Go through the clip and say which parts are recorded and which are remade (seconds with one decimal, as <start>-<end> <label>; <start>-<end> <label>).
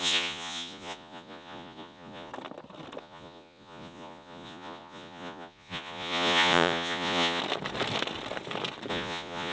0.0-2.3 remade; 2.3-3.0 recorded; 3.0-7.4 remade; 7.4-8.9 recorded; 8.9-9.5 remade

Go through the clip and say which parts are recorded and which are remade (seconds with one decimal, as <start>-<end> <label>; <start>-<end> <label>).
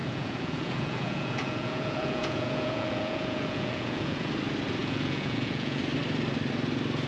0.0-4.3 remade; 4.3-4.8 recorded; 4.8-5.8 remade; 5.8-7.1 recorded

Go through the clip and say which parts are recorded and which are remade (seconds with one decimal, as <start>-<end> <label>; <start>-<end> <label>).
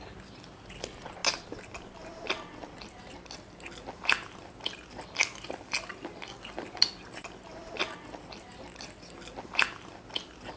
0.0-10.6 recorded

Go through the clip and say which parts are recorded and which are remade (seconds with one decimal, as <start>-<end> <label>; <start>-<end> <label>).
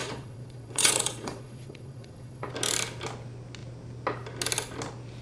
0.0-2.5 remade; 2.5-5.2 recorded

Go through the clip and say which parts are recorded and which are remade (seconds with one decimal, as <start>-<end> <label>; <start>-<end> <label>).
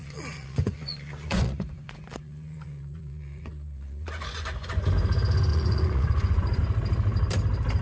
0.0-4.7 remade; 4.7-5.5 recorded; 5.5-6.6 remade; 6.6-7.8 recorded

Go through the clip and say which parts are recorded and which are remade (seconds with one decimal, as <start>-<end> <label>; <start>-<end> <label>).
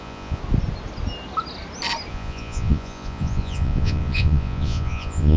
0.0-0.4 remade; 0.4-2.1 recorded; 2.1-5.4 remade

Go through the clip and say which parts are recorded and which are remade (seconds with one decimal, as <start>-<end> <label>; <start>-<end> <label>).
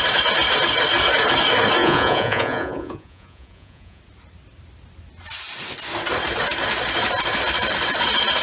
0.0-1.8 recorded; 1.8-4.0 remade; 4.0-8.4 recorded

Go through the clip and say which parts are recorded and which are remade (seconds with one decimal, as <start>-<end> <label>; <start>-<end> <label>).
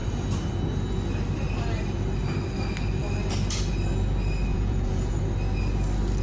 0.0-4.5 recorded; 4.5-5.2 remade; 5.2-6.2 recorded